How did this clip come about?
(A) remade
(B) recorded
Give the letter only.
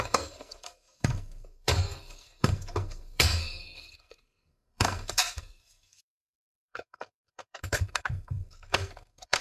A